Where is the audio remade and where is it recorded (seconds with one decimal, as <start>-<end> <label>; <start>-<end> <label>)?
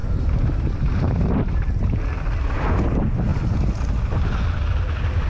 0.0-2.0 remade; 2.0-3.3 recorded; 3.3-4.1 remade; 4.1-5.3 recorded